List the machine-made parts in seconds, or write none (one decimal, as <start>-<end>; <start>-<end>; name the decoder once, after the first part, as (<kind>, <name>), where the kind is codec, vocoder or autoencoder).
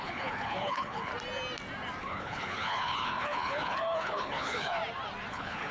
0.0-1.1 (codec, HILCodec); 2.0-4.8; 5.3-5.7